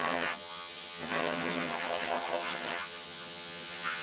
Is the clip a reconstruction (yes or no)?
yes